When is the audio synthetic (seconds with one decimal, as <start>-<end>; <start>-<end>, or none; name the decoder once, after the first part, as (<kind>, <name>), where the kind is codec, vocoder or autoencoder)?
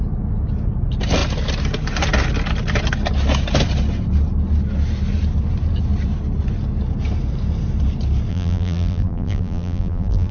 8.3-10.3 (vocoder, BigVGAN v2)